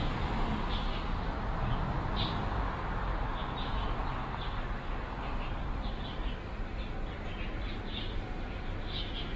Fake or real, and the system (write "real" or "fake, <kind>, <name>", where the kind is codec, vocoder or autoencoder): real